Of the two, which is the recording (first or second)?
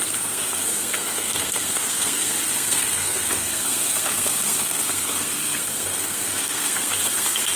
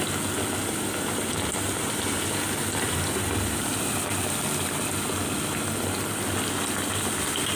second